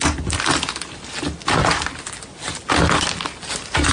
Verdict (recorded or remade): recorded